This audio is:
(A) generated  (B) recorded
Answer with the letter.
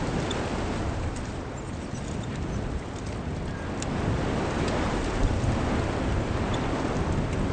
B